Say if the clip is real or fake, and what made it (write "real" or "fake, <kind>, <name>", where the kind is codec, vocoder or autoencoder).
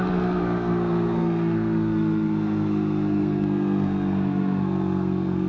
fake, codec, SNAC